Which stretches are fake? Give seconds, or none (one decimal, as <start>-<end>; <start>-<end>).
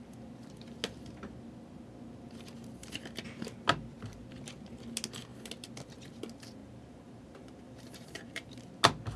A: 6.6-8.5